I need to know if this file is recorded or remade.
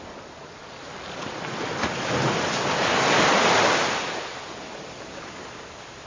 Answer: recorded